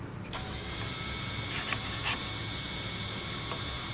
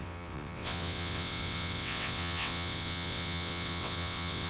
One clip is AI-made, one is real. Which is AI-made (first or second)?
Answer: second